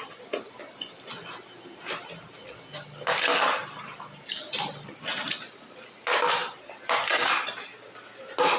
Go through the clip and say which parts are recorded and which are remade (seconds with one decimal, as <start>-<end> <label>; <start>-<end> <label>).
0.0-3.6 recorded; 3.6-4.7 remade; 4.7-8.6 recorded